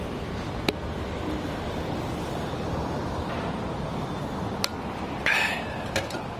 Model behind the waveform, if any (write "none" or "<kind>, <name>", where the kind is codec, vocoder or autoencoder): vocoder, BigVGAN v2